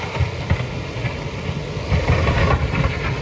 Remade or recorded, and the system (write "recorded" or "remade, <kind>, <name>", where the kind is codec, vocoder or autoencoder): recorded